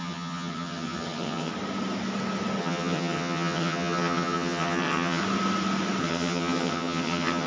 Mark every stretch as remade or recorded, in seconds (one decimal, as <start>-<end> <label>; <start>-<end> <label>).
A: 0.0-1.5 remade; 1.5-2.6 recorded; 2.6-5.2 remade; 5.2-6.0 recorded; 6.0-7.5 remade